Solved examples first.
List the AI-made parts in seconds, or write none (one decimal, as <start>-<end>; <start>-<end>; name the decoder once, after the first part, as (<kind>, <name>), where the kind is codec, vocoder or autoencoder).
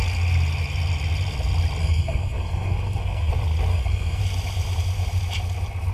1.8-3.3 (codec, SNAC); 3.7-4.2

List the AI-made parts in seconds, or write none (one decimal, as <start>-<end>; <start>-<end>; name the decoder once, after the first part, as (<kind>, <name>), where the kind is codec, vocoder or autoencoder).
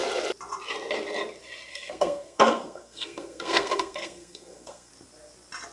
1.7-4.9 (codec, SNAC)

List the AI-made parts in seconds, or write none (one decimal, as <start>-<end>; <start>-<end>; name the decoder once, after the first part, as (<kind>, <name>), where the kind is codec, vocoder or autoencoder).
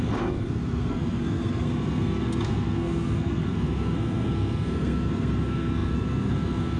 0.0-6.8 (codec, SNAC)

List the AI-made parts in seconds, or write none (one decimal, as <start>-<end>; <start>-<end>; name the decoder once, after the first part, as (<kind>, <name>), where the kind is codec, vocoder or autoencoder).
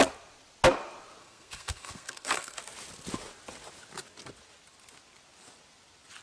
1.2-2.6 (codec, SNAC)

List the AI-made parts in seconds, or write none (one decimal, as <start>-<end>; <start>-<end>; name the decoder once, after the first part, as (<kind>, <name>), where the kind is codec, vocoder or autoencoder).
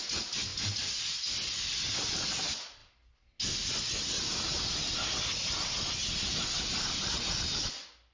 none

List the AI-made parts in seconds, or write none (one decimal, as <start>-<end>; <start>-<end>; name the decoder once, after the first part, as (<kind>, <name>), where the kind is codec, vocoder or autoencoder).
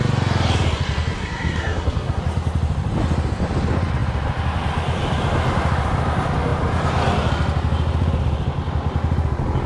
1.2-2.2 (codec, SNAC)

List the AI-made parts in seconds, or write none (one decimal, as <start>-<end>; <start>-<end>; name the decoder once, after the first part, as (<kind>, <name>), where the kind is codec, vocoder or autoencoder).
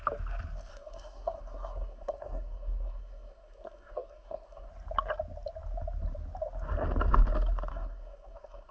0.7-4.7 (codec, SNAC); 7.7-8.7